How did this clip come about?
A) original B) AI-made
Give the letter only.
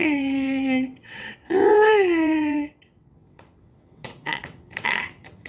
B